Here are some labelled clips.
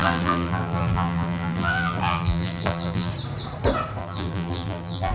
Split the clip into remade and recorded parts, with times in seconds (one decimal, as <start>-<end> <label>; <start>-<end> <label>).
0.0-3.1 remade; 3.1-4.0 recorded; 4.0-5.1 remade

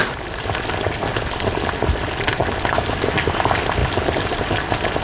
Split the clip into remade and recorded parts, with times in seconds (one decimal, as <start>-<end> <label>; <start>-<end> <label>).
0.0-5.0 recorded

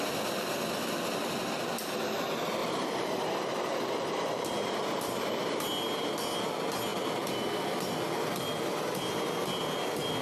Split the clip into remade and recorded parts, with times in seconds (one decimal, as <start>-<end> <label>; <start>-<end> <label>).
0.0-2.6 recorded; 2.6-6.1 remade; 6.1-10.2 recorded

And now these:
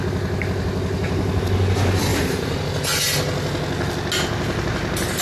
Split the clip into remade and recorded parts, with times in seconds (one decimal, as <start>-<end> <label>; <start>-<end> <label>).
0.0-2.1 recorded; 2.1-2.6 remade; 2.6-5.2 recorded

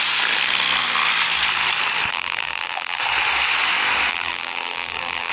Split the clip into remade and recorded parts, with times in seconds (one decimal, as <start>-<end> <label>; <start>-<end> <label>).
0.0-2.1 recorded; 2.1-3.0 remade; 3.0-4.1 recorded; 4.1-5.3 remade

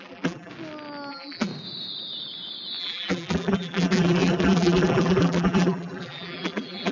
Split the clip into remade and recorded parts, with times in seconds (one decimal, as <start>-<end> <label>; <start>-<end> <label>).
0.0-0.5 remade; 0.5-1.1 recorded; 1.1-1.5 remade; 1.5-2.8 recorded; 2.8-6.9 remade

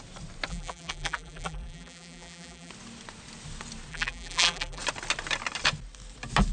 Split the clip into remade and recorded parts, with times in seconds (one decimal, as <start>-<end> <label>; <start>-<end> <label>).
0.0-0.5 recorded; 0.5-2.7 remade; 2.7-3.9 recorded; 3.9-4.8 remade; 4.8-6.5 recorded